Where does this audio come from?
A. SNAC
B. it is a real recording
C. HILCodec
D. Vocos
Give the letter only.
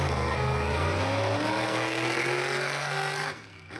A